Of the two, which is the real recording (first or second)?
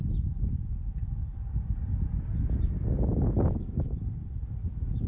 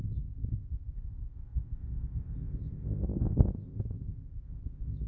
first